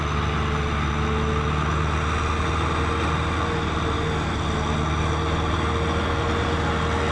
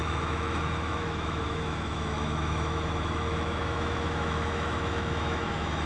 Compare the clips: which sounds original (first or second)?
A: first